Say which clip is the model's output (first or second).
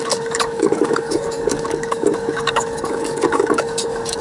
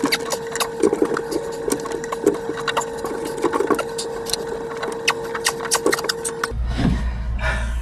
first